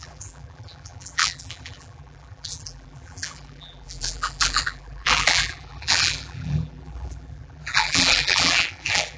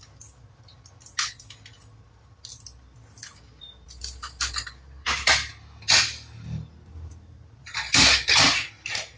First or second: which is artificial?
first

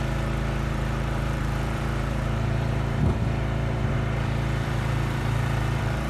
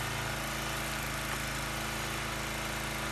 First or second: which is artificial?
first